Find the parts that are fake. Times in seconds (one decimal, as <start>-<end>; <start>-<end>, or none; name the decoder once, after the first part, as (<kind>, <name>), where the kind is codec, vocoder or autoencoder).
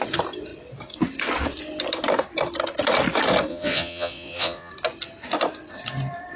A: 3.5-4.7 (vocoder, Vocos)